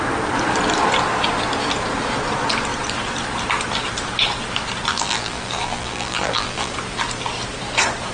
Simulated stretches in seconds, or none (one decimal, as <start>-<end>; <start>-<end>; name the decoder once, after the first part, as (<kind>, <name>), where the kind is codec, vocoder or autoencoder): 4.9-6.7 (vocoder, BigVGAN v2)